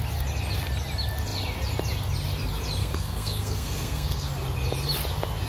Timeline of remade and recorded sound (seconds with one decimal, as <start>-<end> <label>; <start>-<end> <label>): 0.0-2.8 recorded; 2.8-4.3 remade; 4.3-5.5 recorded